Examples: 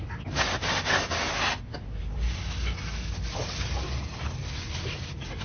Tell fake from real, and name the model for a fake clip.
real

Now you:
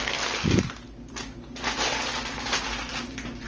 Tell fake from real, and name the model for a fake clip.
real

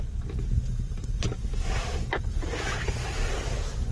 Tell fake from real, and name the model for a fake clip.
real